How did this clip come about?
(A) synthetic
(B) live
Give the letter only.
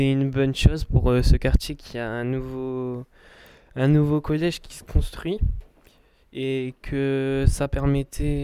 B